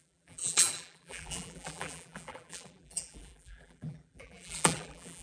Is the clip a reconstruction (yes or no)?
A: yes